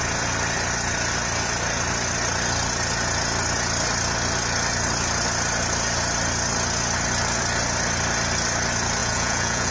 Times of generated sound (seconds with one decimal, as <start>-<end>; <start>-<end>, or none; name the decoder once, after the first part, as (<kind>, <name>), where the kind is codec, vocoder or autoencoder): 9.0-9.7 (vocoder, Vocos)